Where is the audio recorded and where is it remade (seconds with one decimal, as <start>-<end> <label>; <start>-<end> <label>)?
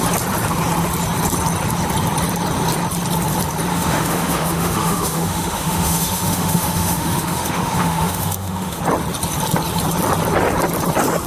0.0-3.7 recorded; 3.7-8.8 remade; 8.8-11.3 recorded